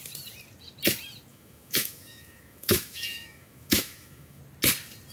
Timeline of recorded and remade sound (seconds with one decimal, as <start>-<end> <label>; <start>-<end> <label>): 0.0-1.3 recorded; 1.3-4.4 remade; 4.4-5.1 recorded